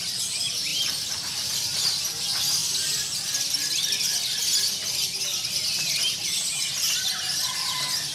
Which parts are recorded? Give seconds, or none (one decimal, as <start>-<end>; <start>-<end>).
0.0-0.7; 2.0-8.1